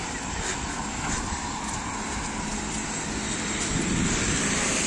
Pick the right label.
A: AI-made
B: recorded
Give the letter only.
B